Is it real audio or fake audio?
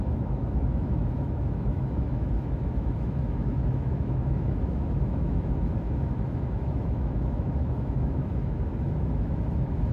fake